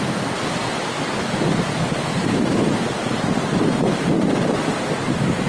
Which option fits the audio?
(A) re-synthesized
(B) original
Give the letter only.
B